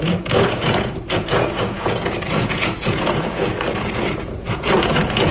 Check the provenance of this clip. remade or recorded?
remade